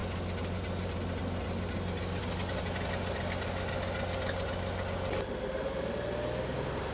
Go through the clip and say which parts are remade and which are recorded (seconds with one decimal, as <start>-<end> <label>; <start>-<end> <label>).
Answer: 0.0-6.9 recorded

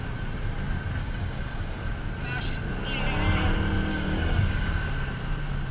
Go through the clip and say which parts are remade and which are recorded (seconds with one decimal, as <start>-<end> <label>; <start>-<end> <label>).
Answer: 0.0-1.0 recorded; 1.0-1.9 remade; 1.9-3.9 recorded; 3.9-4.9 remade; 4.9-5.7 recorded

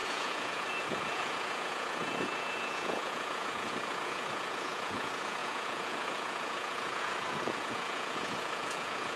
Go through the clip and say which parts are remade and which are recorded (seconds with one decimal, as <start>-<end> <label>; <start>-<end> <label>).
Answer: 0.0-9.2 remade

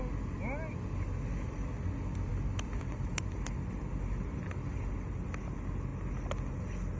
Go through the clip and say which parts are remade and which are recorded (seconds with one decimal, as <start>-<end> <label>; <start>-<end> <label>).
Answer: 0.0-7.0 recorded

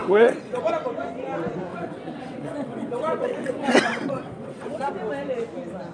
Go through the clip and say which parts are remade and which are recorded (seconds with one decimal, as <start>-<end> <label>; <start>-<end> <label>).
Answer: 0.0-0.6 remade; 0.6-1.7 recorded; 1.7-4.9 remade; 4.9-5.9 recorded